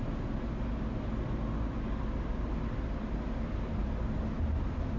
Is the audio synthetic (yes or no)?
no